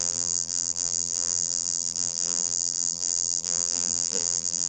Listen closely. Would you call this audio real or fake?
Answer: fake